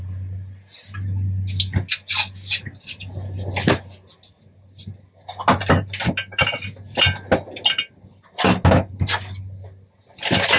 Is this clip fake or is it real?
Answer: real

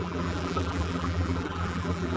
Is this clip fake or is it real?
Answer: fake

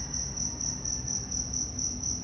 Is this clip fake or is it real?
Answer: real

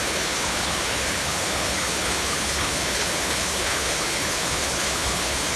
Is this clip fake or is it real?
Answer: fake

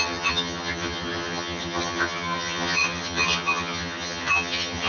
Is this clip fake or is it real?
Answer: fake